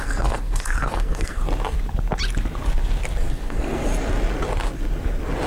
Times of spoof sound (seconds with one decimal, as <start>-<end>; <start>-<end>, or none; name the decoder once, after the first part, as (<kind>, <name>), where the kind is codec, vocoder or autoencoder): 0.0-1.4 (codec, SNAC); 3.3-3.9